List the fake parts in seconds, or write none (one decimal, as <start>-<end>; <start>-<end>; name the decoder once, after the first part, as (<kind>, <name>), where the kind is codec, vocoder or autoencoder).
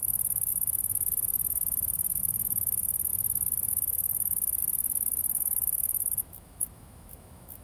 0.0-3.1 (autoencoder, DAC-VAE); 3.7-4.6; 5.2-7.6